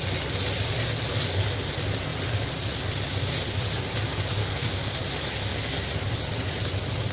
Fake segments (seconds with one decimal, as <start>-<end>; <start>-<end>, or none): 4.4-5.0